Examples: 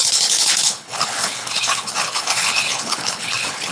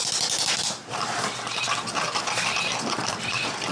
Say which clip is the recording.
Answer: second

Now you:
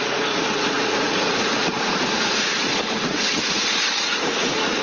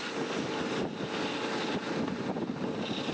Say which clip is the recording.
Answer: second